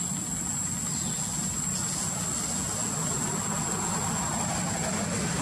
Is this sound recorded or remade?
recorded